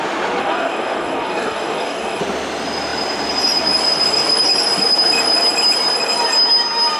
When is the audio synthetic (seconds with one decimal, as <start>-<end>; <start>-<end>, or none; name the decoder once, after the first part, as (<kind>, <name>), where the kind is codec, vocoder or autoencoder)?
0.4-2.2 (codec, DAC)